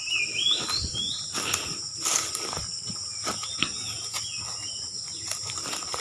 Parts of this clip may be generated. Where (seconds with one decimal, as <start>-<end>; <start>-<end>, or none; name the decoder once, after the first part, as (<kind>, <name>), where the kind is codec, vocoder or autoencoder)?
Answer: none

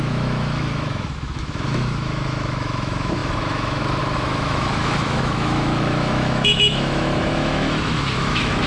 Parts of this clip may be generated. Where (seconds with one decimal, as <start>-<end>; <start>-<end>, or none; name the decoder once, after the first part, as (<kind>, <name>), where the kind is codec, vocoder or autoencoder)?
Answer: 0.0-8.7 (autoencoder, DAC-VAE)

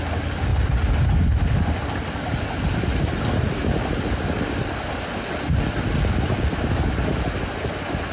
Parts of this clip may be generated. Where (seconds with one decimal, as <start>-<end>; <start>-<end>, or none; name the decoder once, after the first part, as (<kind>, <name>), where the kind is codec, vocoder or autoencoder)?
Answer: 0.5-1.1 (vocoder, BigVGAN v2)

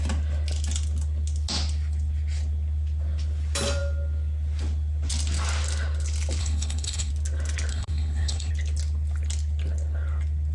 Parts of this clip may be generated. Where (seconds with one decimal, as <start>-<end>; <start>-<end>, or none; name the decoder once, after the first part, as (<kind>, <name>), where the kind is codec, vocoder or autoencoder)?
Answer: 6.4-7.1 (codec, SNAC); 7.7-8.5

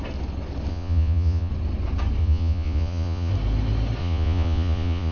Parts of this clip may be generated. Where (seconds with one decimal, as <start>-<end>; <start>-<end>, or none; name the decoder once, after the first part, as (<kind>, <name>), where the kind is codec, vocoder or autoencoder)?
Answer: 0.7-1.5 (vocoder, Vocos); 2.2-3.3; 4.0-5.1

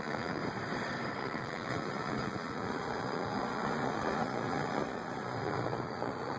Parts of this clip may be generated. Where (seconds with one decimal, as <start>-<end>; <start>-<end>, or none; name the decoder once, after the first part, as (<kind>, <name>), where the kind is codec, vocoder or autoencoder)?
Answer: 0.0-0.4 (vocoder, Vocos); 1.2-6.4

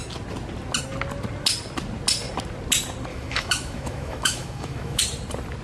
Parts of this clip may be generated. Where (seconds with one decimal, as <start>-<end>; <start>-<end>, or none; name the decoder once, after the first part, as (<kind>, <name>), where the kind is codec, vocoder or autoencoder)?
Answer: 3.1-5.0 (autoencoder, DAC-VAE)